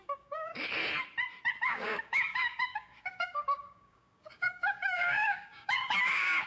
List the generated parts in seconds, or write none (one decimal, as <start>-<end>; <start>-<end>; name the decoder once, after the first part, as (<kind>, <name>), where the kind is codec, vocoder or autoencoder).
0.0-0.5 (codec, DAC); 1.5-6.5